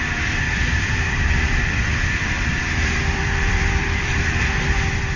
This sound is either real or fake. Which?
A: fake